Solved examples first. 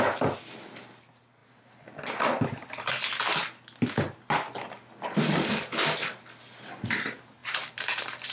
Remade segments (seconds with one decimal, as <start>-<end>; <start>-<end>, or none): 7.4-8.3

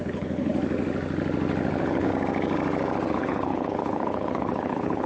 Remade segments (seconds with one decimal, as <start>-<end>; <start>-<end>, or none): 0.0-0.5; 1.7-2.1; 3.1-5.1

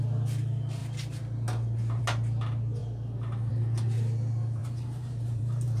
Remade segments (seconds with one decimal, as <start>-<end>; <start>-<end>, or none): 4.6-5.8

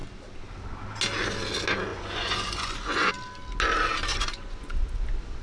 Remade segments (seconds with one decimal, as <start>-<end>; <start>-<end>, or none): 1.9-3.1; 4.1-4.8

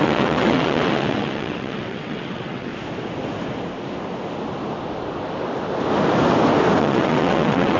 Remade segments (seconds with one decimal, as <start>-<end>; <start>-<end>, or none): 0.0-2.7; 6.8-7.8

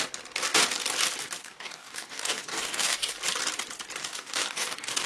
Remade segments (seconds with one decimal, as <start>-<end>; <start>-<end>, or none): 1.4-3.1; 4.0-5.1